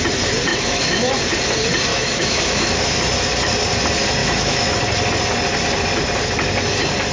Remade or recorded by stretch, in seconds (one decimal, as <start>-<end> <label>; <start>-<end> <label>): 0.0-0.5 recorded; 0.5-1.2 remade; 1.2-1.9 recorded; 1.9-2.9 remade; 2.9-4.2 recorded; 4.2-4.8 remade; 4.8-7.1 recorded